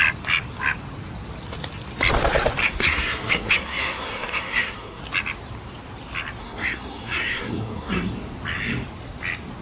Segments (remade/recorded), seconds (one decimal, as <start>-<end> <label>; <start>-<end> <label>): 0.0-2.6 recorded; 2.6-5.0 remade; 5.0-6.4 recorded; 6.4-8.1 remade; 8.1-9.6 recorded